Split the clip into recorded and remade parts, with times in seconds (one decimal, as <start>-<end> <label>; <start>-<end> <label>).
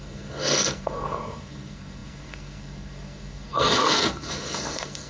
0.0-5.1 remade